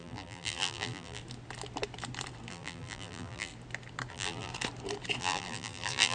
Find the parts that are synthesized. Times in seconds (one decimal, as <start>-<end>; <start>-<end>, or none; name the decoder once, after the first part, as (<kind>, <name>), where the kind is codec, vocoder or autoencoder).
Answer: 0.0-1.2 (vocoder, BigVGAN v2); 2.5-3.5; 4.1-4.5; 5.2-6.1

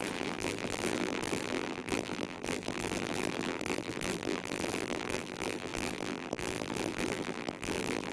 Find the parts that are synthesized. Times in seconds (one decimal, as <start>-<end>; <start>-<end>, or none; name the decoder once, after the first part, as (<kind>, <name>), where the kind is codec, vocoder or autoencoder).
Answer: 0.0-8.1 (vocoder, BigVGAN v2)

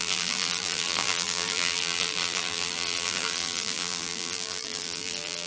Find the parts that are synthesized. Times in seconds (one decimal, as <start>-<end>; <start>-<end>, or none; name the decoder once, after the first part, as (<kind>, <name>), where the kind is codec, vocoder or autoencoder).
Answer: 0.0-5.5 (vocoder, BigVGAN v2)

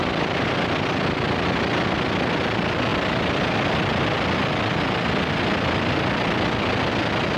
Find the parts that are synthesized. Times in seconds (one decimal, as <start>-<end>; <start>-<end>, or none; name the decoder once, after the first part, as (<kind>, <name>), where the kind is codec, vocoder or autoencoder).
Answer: 0.0-0.5 (vocoder, BigVGAN v2)

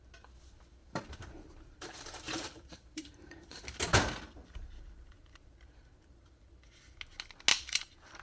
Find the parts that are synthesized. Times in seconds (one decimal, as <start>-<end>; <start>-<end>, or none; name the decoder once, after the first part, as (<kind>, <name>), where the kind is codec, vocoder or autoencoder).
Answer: 0.8-3.6 (vocoder, BigVGAN v2); 4.4-6.4; 7.5-8.2

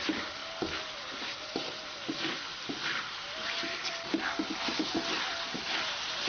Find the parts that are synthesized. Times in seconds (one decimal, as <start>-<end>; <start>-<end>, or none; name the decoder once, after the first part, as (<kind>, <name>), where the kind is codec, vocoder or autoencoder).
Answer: none

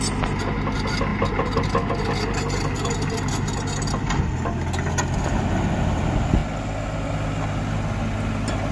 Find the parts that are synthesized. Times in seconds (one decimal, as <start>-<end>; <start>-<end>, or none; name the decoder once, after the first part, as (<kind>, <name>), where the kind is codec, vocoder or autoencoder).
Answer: none